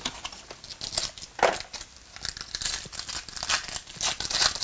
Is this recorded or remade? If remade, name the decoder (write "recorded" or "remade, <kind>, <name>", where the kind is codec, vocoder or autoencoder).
recorded